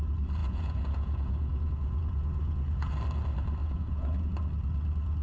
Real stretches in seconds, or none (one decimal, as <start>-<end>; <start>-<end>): 0.0-0.4; 2.9-3.6; 4.3-5.2